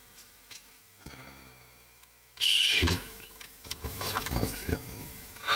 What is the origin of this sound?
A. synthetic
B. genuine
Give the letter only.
A